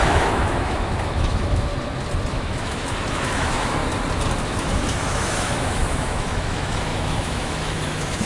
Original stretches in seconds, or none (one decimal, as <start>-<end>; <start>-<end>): 1.7-2.3; 3.8-4.4